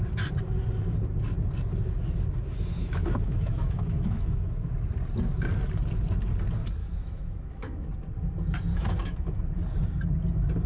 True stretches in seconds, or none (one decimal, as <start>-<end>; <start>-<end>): 0.0-2.8; 4.4-6.8; 7.9-8.7; 9.4-10.7